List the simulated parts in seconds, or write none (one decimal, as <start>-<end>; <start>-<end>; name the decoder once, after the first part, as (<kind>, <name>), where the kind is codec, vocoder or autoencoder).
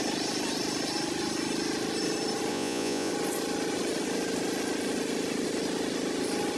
2.5-3.1 (vocoder, Vocos)